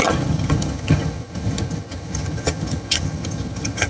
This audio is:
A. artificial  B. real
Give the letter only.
A